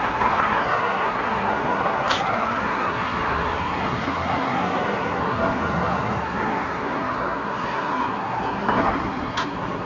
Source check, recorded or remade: remade